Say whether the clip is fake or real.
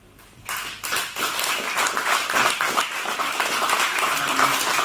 real